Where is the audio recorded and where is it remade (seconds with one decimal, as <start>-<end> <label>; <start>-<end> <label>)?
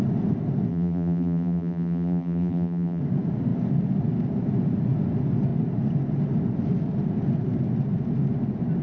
0.0-0.7 recorded; 0.7-3.0 remade; 3.0-8.8 recorded